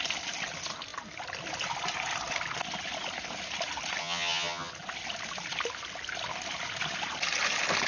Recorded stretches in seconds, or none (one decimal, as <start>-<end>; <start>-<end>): 0.0-4.0; 4.7-7.9